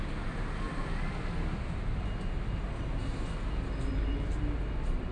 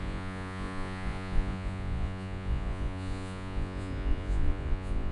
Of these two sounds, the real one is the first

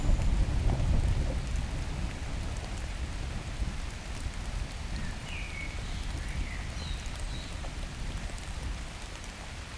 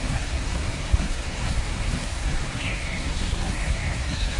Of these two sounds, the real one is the first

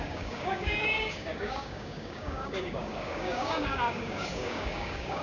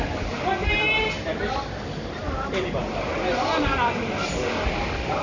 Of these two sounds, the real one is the second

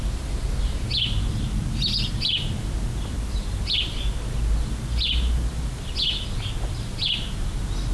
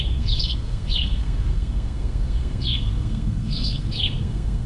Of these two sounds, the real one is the first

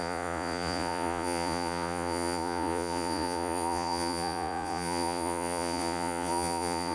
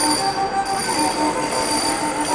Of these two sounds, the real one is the second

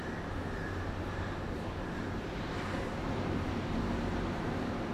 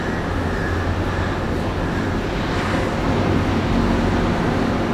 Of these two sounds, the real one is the second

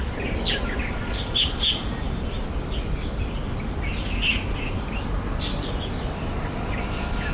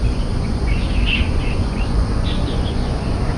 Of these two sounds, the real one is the first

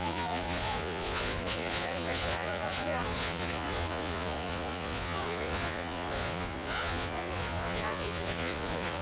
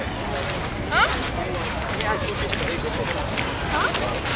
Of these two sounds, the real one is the second